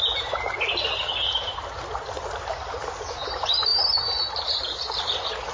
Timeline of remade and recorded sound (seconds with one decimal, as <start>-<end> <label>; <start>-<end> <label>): 0.0-5.5 recorded